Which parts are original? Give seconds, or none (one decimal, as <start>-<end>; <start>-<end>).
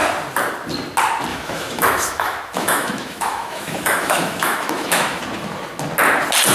0.0-1.3; 5.2-6.5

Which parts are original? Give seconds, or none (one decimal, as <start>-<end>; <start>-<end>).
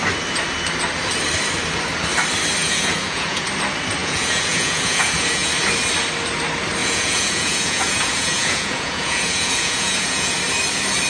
0.0-2.6; 3.5-4.0; 5.5-6.8; 10.4-11.1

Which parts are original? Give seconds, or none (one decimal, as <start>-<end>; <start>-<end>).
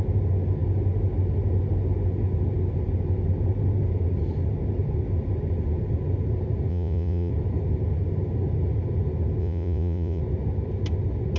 0.0-6.7; 7.3-9.4; 10.2-11.4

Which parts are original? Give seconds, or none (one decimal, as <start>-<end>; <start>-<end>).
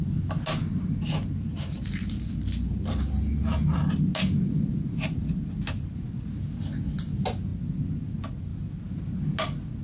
0.0-1.5; 2.3-8.5; 9.2-9.8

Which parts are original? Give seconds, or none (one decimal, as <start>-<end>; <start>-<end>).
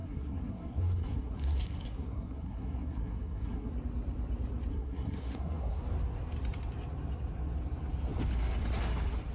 3.7-4.7; 5.8-9.3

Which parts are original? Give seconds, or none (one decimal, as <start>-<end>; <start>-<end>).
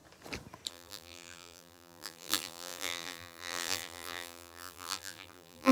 0.0-0.7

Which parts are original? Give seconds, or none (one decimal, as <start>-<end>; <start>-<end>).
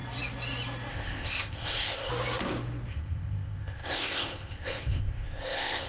0.0-0.9; 2.1-2.9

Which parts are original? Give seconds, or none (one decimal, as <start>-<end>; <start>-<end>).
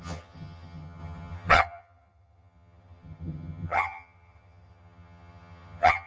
none